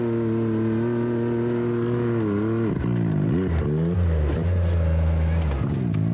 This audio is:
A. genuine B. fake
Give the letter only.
A